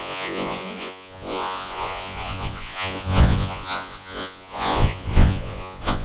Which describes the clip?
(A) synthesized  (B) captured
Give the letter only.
A